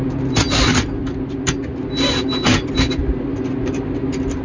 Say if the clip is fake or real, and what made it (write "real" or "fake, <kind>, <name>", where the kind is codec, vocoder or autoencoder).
real